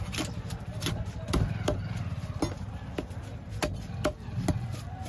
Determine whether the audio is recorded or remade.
recorded